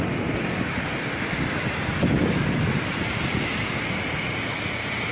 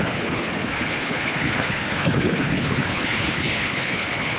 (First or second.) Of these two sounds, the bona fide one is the first